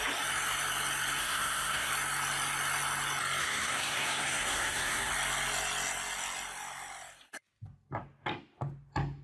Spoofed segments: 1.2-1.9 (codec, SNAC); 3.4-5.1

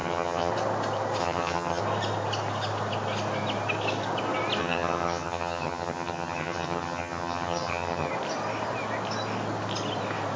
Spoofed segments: 0.0-0.5 (vocoder, HiFi-GAN); 1.2-1.8; 4.6-8.1